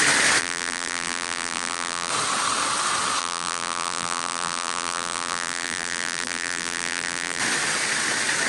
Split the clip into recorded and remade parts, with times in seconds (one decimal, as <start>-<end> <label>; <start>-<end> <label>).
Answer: 0.0-0.4 recorded; 0.4-2.1 remade; 2.1-3.2 recorded; 3.2-7.4 remade; 7.4-8.5 recorded